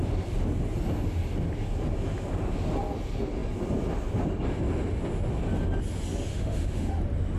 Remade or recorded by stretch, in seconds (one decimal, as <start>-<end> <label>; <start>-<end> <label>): 0.0-6.3 recorded; 6.3-7.0 remade; 7.0-7.4 recorded